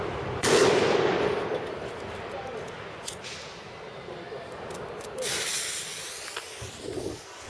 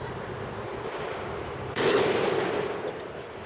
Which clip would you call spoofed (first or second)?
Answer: first